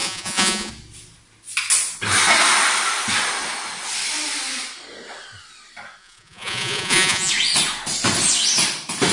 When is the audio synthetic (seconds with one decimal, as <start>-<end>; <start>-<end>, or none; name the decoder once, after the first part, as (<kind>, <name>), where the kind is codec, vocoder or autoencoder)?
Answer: 0.0-0.7 (vocoder, Vocos); 6.0-7.3